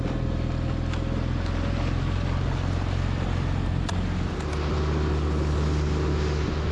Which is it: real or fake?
real